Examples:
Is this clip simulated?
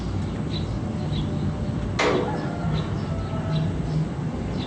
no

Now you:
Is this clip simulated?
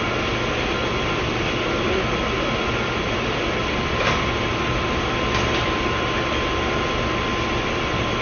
no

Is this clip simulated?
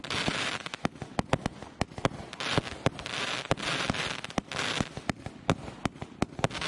no